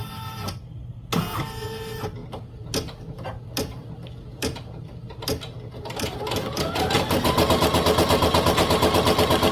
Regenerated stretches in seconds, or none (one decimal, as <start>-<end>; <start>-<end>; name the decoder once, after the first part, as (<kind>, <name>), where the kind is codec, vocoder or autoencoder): none